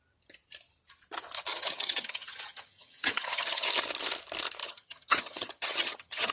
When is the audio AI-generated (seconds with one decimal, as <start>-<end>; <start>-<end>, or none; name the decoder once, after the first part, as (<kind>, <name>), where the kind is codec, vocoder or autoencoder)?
1.5-3.7 (vocoder, HiFi-GAN); 4.6-6.3